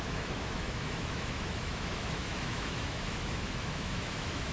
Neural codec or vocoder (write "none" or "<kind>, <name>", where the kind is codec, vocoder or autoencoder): autoencoder, DAC-VAE